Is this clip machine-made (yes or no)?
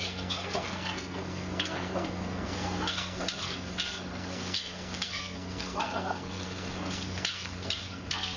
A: yes